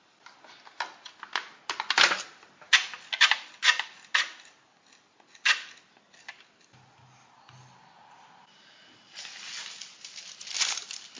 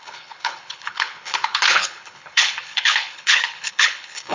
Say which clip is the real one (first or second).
first